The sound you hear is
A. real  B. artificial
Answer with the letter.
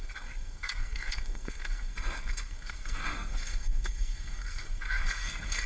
B